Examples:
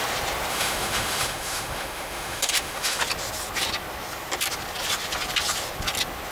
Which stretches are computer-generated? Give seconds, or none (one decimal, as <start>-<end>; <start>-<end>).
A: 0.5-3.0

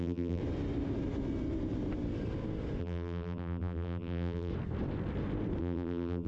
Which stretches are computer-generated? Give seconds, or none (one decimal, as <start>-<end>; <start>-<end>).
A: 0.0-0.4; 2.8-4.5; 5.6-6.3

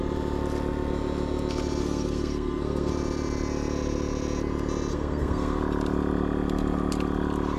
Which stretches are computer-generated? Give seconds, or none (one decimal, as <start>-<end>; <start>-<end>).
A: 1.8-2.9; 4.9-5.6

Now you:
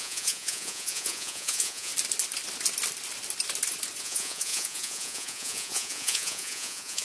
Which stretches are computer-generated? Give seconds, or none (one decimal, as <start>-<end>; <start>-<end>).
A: 0.0-1.9; 4.0-7.0